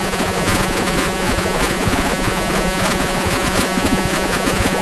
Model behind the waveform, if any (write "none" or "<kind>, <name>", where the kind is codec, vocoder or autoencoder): vocoder, Vocos